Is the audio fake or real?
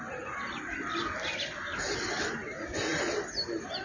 real